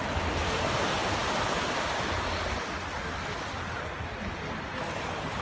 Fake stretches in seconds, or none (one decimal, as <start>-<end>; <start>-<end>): none